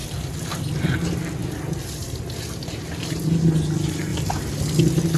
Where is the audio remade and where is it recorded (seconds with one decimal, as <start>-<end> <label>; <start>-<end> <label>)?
0.0-0.6 remade; 0.6-5.2 recorded